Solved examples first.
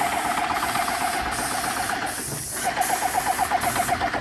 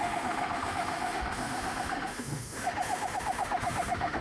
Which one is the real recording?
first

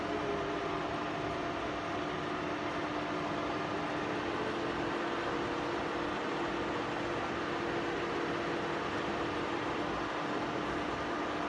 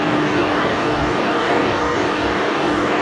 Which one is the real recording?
first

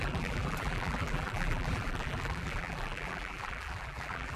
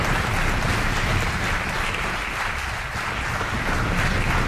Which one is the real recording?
second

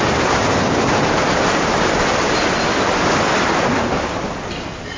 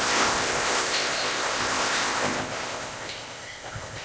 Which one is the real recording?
first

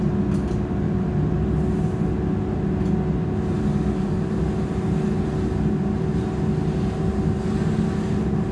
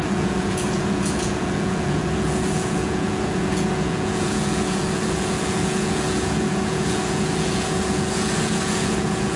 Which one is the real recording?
first